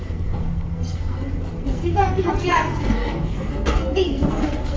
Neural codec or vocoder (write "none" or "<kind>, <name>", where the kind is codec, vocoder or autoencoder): codec, SNAC